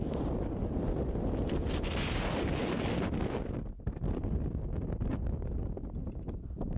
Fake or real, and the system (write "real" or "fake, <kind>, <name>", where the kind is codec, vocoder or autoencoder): real